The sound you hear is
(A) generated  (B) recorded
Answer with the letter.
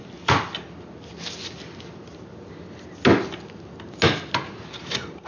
B